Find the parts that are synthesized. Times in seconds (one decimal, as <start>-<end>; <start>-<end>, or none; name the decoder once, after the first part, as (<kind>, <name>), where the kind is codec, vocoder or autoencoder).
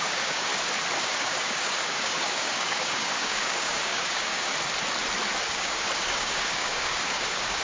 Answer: 0.0-0.5 (codec, DAC); 1.0-4.5; 5.5-7.6